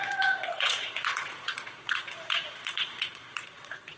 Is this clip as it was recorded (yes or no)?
no